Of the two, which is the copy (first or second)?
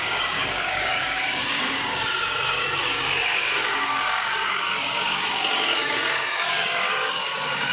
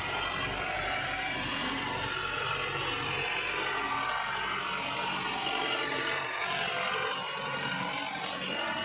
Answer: first